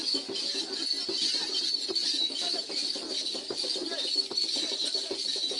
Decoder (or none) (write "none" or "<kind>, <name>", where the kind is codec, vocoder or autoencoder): none